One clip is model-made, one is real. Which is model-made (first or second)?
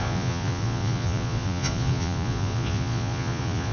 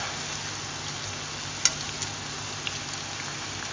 first